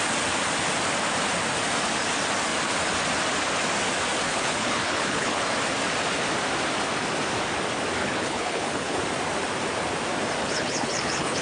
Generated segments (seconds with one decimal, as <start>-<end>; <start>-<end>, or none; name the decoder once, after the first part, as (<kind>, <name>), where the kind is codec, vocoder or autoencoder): 4.3-5.4 (codec, HILCodec); 8.0-9.0; 10.4-11.4